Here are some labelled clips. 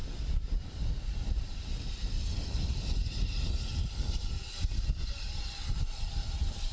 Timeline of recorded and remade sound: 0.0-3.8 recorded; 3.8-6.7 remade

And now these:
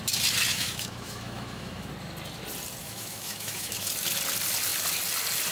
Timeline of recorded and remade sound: 0.0-0.5 recorded; 0.5-1.9 remade; 1.9-2.8 recorded; 2.8-3.9 remade; 3.9-5.5 recorded